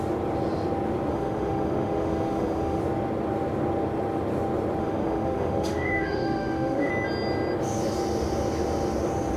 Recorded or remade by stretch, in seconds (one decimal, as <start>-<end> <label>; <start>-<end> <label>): 0.0-1.1 recorded; 1.1-2.8 remade; 2.8-4.8 recorded; 4.8-6.9 remade; 6.9-9.4 recorded